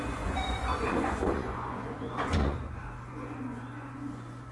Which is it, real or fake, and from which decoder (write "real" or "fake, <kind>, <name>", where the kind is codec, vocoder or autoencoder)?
fake, vocoder, Vocos